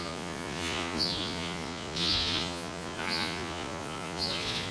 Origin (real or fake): fake